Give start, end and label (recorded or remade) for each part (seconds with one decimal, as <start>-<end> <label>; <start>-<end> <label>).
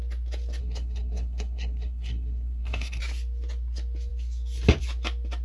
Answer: 0.0-0.6 recorded; 0.6-3.0 remade; 3.0-5.4 recorded